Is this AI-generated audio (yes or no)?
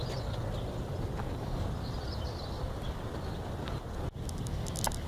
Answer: no